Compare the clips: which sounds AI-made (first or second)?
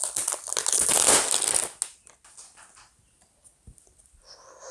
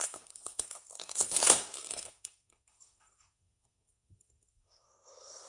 second